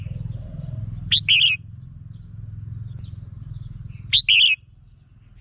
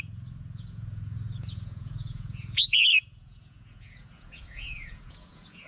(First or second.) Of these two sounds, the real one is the first